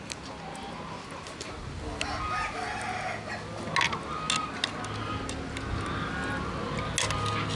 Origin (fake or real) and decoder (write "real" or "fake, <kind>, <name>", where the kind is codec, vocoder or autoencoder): real